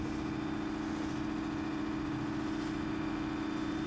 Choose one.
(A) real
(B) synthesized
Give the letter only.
A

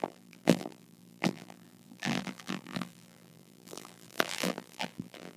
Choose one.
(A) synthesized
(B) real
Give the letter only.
A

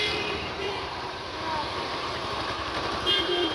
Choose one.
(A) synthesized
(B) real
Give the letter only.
A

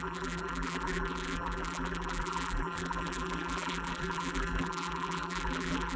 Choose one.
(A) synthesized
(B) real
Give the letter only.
A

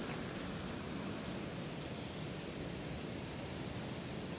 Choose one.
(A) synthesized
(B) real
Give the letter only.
B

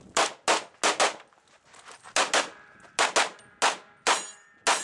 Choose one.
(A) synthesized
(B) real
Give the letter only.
B